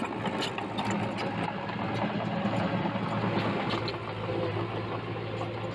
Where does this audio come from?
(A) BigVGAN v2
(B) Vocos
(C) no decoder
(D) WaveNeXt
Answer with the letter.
C